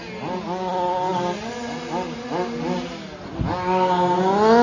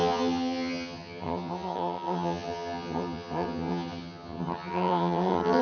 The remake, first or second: second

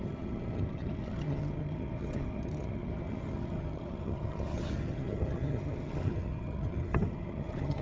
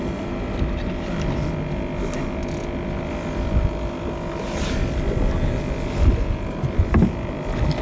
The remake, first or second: first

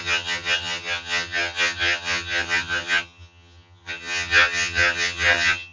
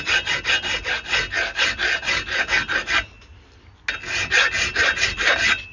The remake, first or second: first